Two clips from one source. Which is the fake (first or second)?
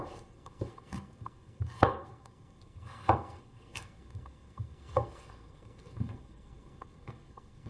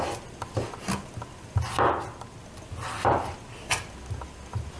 first